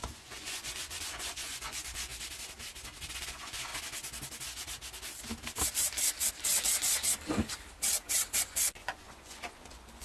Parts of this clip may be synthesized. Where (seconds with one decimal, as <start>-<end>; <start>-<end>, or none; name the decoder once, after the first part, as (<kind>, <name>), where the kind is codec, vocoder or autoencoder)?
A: 0.0-2.1 (vocoder, Vocos); 3.1-3.7; 8.4-10.0